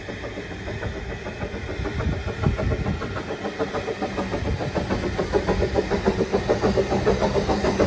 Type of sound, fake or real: real